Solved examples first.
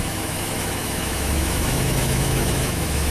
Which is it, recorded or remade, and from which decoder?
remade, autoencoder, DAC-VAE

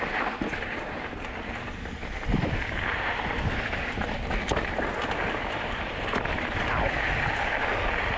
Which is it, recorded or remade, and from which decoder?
remade, vocoder, BigVGAN v2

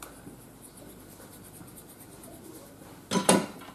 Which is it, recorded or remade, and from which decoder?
recorded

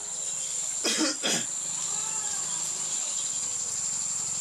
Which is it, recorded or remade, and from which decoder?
recorded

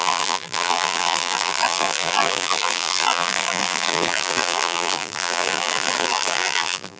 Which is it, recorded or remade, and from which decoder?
remade, vocoder, BigVGAN v2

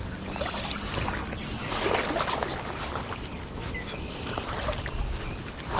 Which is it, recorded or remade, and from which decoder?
recorded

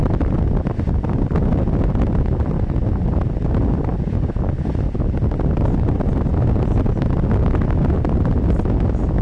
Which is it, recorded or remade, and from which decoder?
recorded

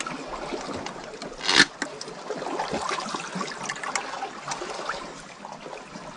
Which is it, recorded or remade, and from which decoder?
recorded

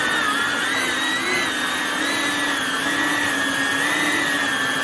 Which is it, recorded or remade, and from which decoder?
recorded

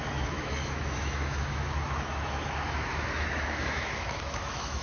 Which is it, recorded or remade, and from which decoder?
remade, autoencoder, DAC-VAE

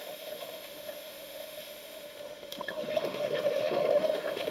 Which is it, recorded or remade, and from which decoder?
remade, autoencoder, DAC-VAE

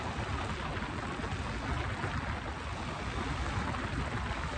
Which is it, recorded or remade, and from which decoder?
recorded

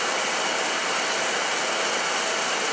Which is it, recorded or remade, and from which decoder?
recorded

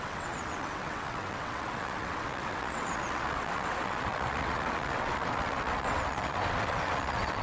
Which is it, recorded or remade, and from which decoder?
remade, vocoder, WaveNeXt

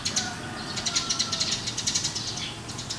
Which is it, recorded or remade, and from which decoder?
recorded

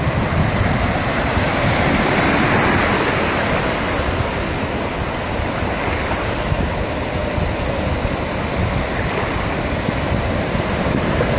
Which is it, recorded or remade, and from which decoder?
recorded